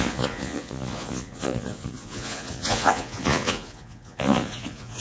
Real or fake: fake